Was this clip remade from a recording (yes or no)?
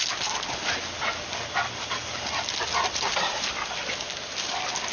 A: no